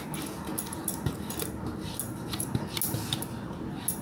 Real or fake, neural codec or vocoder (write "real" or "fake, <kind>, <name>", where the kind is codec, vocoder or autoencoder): real